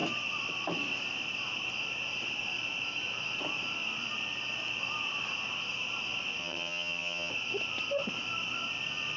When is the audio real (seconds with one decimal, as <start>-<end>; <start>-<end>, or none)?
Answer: 0.0-6.4; 7.3-9.2